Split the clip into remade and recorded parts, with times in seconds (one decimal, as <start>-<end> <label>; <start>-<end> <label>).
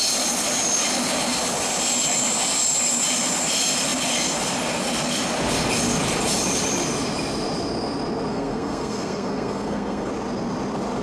0.0-8.3 recorded; 8.3-10.1 remade; 10.1-11.0 recorded